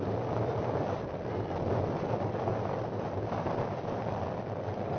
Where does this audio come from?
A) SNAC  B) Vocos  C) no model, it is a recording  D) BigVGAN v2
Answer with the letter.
C